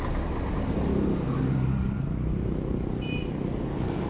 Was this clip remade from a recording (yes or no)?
no